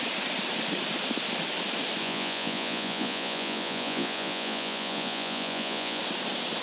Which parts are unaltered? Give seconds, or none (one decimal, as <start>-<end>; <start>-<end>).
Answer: 0.0-2.0; 6.0-6.6